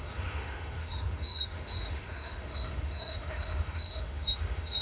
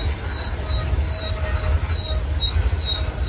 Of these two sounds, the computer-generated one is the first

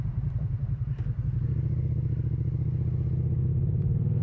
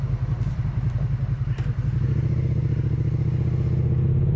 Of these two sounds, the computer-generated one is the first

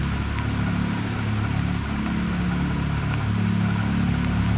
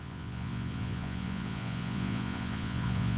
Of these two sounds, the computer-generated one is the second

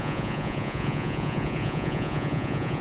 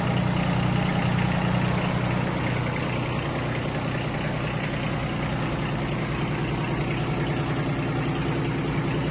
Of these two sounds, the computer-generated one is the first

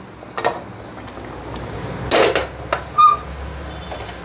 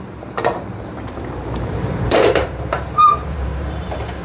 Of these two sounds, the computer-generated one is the second